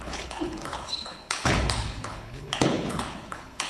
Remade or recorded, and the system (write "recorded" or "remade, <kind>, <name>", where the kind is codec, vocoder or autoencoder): remade, codec, HILCodec